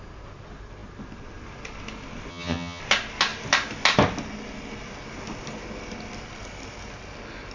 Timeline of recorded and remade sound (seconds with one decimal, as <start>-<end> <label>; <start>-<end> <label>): 0.0-2.3 recorded; 2.3-2.8 remade; 2.8-7.5 recorded